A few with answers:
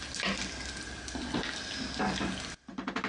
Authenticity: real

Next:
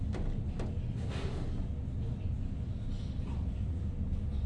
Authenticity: real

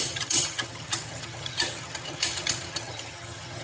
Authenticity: fake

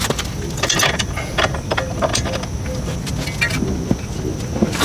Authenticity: real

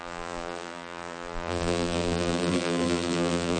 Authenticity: fake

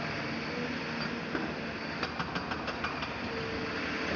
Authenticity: real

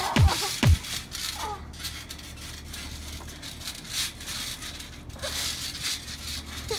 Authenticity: real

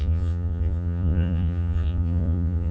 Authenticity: fake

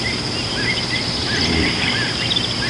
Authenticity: real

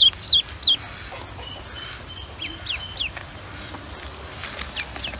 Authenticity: real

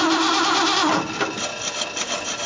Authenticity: real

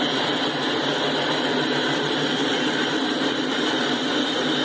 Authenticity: real